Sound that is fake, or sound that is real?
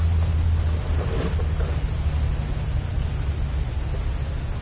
real